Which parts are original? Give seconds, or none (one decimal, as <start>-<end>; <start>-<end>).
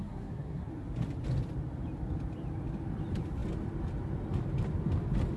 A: 0.7-5.4